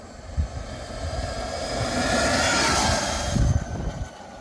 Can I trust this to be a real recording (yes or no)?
yes